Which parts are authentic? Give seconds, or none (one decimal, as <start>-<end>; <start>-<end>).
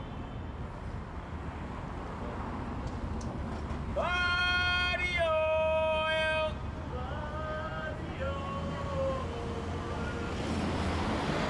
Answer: 0.0-3.9; 4.4-11.5